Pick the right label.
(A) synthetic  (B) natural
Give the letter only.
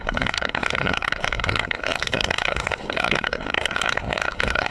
A